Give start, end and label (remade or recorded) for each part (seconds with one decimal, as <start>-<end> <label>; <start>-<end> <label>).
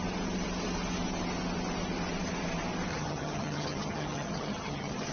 0.0-2.9 recorded; 2.9-5.1 remade